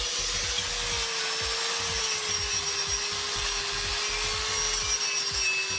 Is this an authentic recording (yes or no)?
yes